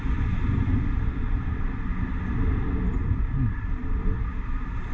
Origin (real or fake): real